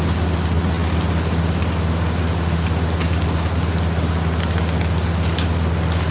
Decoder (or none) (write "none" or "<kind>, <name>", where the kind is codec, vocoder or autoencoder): none